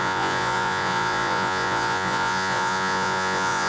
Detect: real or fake fake